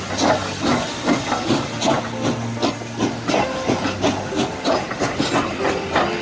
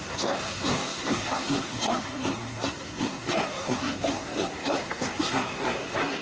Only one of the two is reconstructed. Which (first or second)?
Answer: second